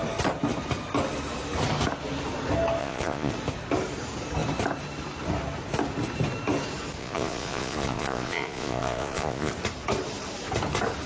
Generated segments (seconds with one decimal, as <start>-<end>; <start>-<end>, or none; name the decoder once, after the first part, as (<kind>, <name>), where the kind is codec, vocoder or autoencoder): 2.8-3.3 (vocoder, Vocos); 7.0-9.5